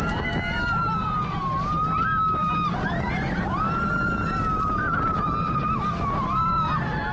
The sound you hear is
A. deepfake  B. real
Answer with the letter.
B